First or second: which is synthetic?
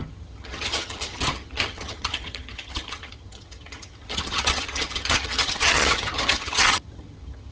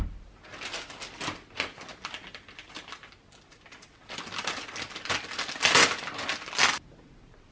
first